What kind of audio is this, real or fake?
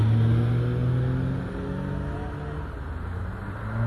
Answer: real